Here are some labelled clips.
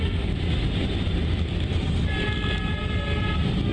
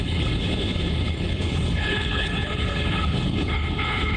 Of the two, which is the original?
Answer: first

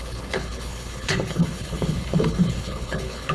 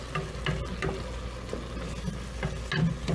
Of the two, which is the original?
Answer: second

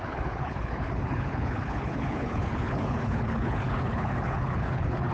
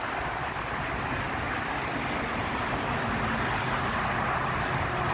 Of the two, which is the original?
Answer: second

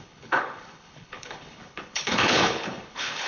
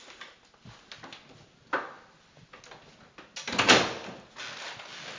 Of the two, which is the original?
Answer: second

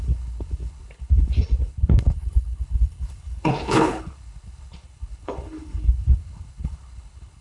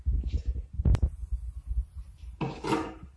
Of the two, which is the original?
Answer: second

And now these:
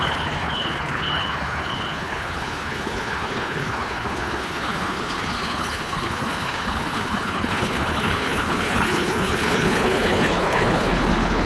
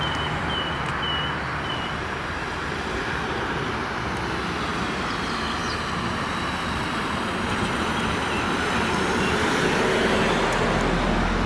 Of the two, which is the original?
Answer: second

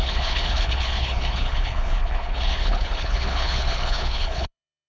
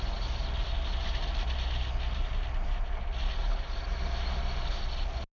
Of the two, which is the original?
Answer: second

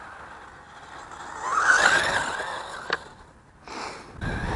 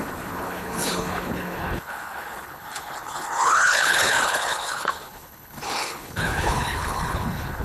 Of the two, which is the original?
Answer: first